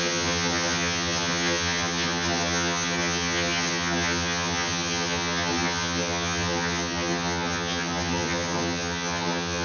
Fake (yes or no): yes